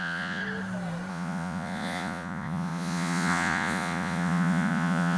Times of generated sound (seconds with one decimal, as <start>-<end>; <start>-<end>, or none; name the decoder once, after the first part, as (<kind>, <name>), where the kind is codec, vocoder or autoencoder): 0.0-0.4 (vocoder, Vocos); 1.1-5.2